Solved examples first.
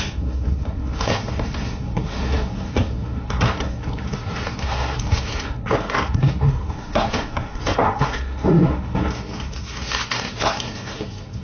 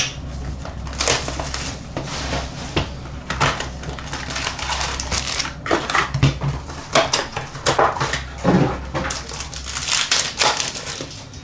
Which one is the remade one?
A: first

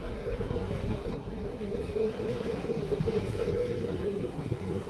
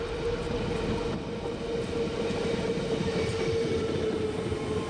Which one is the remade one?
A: first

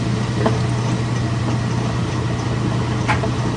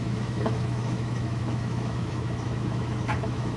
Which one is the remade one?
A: second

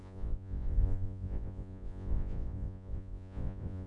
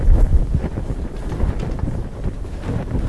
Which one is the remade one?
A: first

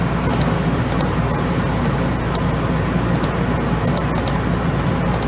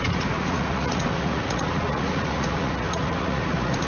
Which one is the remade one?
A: second